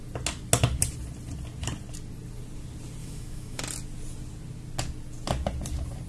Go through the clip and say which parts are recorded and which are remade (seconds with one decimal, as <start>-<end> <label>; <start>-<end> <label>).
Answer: 0.0-3.0 recorded; 3.0-3.6 remade; 3.6-6.1 recorded